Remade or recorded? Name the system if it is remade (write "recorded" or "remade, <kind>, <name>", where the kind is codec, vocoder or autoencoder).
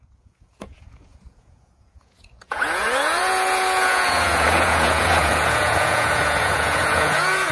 remade, vocoder, Vocos